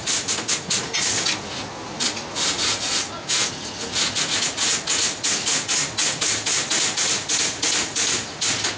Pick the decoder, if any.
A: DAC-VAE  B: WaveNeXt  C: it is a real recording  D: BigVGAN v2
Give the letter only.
C